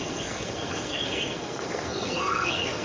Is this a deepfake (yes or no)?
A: yes